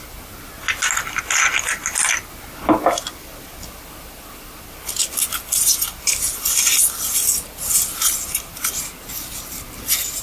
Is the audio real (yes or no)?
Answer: yes